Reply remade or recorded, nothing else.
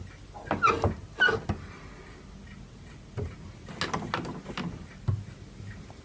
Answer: recorded